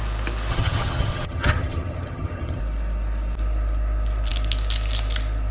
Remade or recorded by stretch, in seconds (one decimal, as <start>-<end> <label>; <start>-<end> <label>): 0.0-0.5 recorded; 0.5-2.6 remade; 2.6-5.5 recorded